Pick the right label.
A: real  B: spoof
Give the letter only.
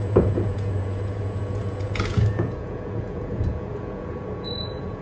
B